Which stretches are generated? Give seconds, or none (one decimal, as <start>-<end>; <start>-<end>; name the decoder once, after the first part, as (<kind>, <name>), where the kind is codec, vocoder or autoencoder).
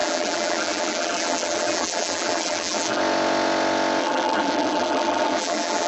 0.0-3.0 (vocoder, BigVGAN v2); 4.0-5.9